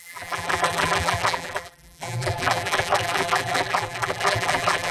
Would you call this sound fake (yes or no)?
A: yes